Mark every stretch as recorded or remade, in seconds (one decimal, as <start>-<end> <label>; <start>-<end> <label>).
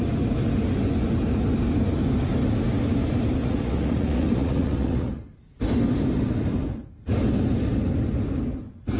0.0-3.4 recorded; 3.4-5.1 remade; 5.1-9.0 recorded